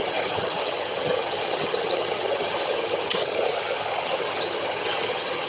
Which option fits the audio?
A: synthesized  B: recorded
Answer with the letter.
A